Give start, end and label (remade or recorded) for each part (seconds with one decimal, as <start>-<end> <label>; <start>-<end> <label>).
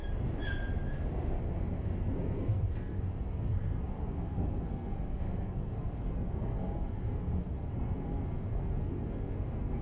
0.0-1.4 recorded; 1.4-9.8 remade